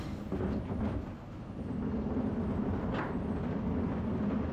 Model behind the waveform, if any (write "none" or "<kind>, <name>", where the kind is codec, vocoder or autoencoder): none